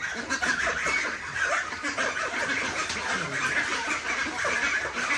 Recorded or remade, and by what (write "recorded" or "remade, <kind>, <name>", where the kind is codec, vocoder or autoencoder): recorded